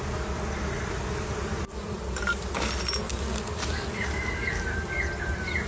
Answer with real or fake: real